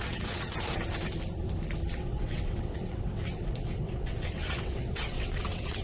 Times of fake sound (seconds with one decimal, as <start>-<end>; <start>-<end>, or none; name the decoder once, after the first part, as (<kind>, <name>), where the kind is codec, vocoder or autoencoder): 0.0-0.5 (vocoder, WaveNeXt); 1.9-5.8

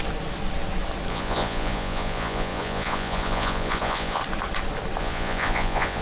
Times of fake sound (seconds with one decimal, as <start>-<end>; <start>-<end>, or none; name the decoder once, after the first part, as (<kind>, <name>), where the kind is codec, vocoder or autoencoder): 1.1-4.2 (vocoder, Vocos); 5.0-6.0

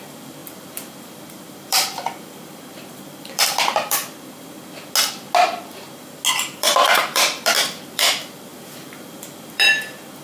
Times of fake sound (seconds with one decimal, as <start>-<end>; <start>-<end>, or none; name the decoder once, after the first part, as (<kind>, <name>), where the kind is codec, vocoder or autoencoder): 0.0-4.0 (vocoder, BigVGAN v2); 6.4-10.2